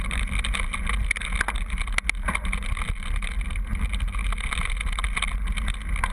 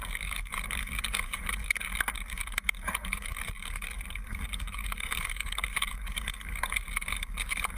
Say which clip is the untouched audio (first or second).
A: first